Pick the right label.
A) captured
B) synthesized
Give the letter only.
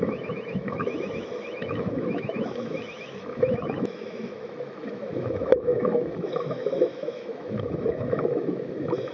B